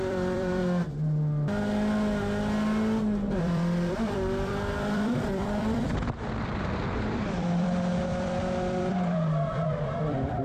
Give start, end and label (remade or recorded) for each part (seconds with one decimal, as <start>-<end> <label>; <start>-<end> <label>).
0.0-0.6 remade; 0.6-3.4 recorded; 3.4-10.4 remade